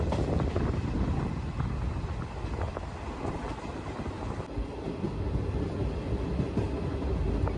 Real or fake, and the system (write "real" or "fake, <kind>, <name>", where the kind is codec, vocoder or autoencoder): real